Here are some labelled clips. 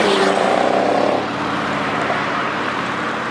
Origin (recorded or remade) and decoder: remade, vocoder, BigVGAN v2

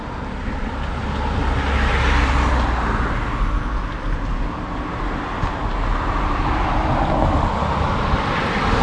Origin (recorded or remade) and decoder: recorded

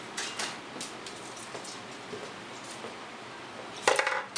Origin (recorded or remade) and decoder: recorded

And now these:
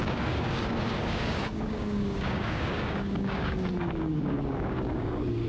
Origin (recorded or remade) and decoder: remade, codec, DAC